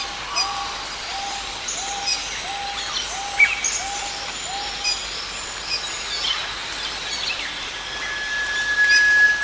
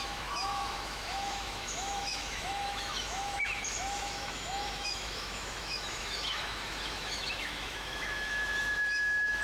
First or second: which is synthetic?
second